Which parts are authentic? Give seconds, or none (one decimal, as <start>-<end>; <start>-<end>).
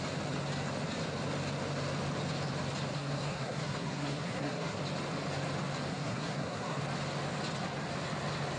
0.0-2.9; 4.8-5.9; 6.8-8.6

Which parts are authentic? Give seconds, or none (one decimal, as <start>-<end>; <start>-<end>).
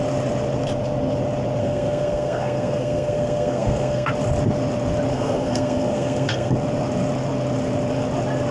0.0-1.6; 4.1-5.1; 6.5-8.5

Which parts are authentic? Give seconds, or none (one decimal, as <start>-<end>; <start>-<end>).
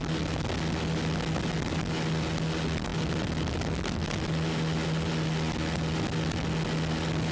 0.0-7.3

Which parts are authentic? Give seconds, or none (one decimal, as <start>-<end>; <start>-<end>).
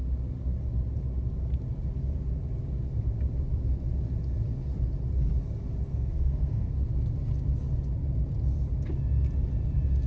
0.0-5.9; 6.7-10.1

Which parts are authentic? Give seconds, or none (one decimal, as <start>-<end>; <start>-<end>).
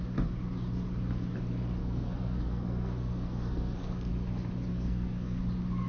0.0-1.8; 4.1-4.7; 5.4-5.9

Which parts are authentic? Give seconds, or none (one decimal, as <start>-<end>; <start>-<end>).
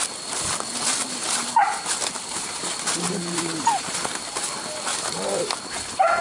0.0-1.5; 4.4-4.9; 5.4-6.2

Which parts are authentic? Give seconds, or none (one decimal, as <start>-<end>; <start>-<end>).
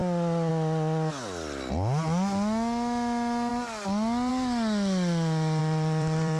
0.0-5.6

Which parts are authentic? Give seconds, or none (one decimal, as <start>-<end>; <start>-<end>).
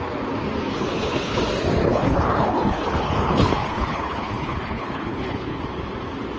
0.0-0.7; 1.4-1.8; 5.6-6.4